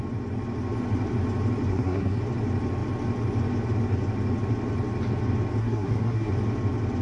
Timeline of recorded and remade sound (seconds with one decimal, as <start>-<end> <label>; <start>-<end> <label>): 0.0-1.7 recorded; 1.7-2.2 remade; 2.2-5.6 recorded; 5.6-6.3 remade; 6.3-7.0 recorded